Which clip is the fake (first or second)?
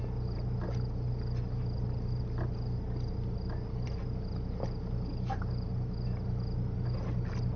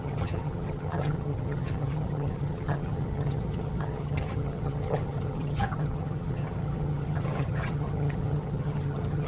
second